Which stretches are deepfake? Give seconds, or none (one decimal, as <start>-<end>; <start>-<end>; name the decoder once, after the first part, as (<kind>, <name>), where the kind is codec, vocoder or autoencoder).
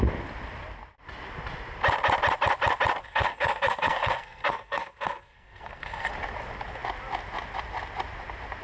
3.0-6.1 (codec, SNAC)